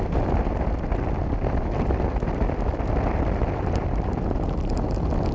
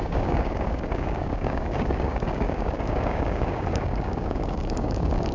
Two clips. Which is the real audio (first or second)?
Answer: first